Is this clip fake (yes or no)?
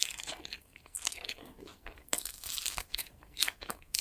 yes